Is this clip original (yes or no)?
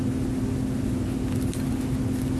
yes